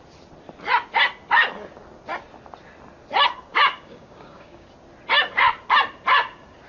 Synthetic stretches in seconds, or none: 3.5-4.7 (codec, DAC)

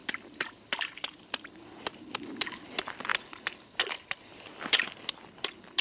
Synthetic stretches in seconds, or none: none

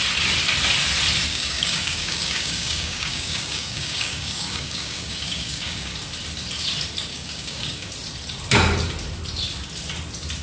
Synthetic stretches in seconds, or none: 1.3-5.9 (codec, DAC); 7.1-7.9

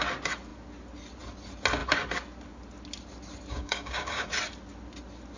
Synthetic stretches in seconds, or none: 3.5-4.3 (codec, DAC)

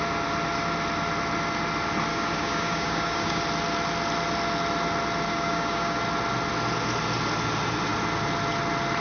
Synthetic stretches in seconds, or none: 2.1-3.4 (codec, DAC); 5.3-6.0

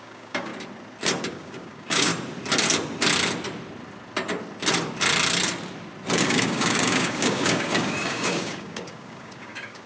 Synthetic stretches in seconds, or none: 0.0-0.5 (codec, DAC); 1.3-2.1; 6.2-9.9

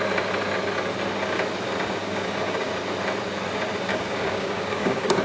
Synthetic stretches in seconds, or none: 2.0-2.7 (codec, DAC); 3.9-5.2

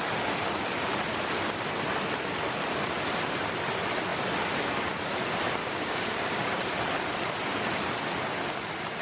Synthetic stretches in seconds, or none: 5.6-6.6 (codec, DAC)